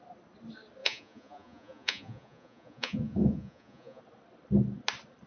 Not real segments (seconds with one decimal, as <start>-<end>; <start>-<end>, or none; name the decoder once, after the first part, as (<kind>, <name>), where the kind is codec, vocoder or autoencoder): 0.8-4.0 (vocoder, Vocos)